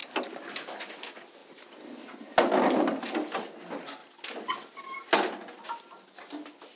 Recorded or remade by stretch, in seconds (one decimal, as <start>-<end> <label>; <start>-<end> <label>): 0.0-4.0 recorded; 4.0-4.7 remade; 4.7-6.8 recorded